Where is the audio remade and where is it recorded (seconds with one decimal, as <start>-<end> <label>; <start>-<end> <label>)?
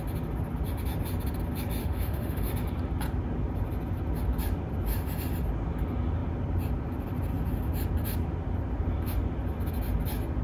0.0-1.8 recorded; 1.8-2.5 remade; 2.5-10.4 recorded